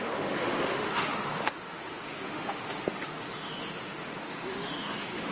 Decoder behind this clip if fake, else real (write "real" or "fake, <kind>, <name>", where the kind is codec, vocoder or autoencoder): fake, autoencoder, DAC-VAE